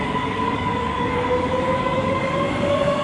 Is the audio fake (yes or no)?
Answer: yes